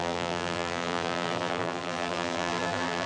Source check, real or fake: fake